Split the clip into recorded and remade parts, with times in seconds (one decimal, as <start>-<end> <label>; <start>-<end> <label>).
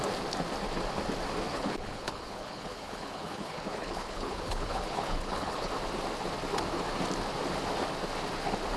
0.0-1.5 recorded; 1.5-5.7 remade; 5.7-8.8 recorded